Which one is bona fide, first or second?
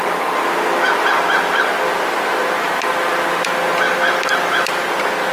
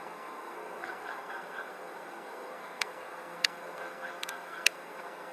first